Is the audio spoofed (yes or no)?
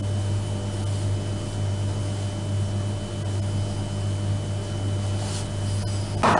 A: no